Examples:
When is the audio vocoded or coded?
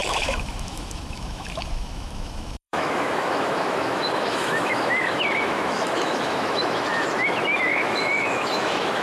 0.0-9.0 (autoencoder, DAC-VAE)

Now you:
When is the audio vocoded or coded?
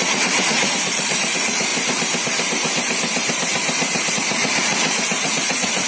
0.0-1.7 (vocoder, Vocos); 4.1-5.9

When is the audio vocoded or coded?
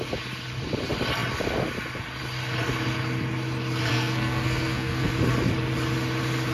3.9-5.1 (codec, SNAC)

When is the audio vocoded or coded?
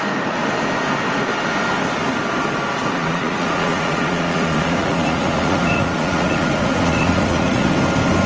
2.8-7.7 (vocoder, Vocos)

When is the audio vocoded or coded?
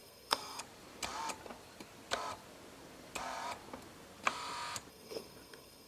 0.0-0.6 (codec, SNAC); 4.9-5.9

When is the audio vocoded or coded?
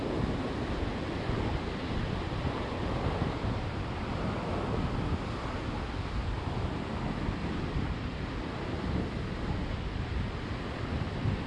none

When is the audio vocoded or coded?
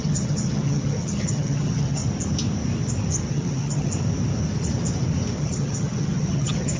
0.0-2.0 (vocoder, HiFi-GAN); 3.3-3.9; 5.4-6.8